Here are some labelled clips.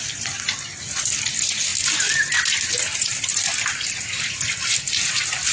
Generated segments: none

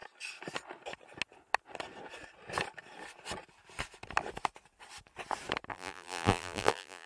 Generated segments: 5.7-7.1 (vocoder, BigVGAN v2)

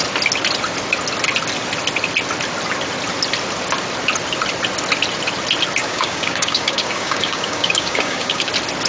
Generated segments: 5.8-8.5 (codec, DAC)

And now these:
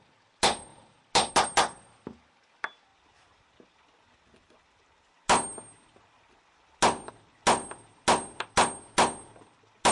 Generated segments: none